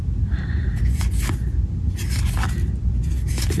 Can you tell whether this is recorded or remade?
recorded